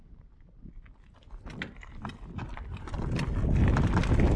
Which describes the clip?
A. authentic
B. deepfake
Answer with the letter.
A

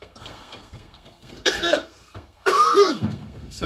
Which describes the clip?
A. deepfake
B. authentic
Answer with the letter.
A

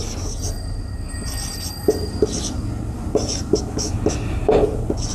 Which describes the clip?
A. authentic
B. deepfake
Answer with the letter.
A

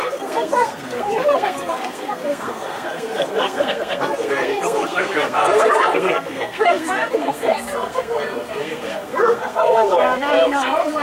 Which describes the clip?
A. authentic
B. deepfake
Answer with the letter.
B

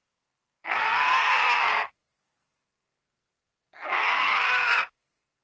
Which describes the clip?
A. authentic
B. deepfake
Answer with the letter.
B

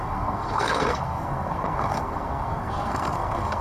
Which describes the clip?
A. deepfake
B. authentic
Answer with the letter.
A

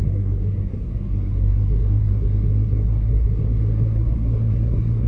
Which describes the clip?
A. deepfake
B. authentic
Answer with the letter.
A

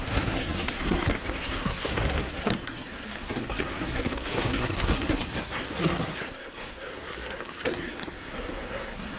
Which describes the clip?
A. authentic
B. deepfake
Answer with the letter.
B